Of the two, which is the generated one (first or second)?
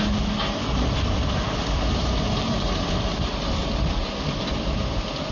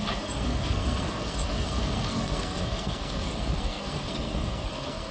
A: second